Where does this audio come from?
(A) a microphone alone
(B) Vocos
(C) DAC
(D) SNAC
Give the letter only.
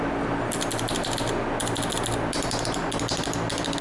A